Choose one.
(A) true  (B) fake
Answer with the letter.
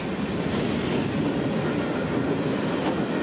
A